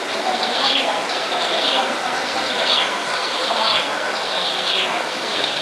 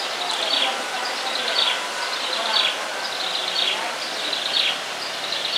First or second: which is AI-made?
first